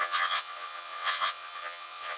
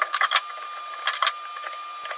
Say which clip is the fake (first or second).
first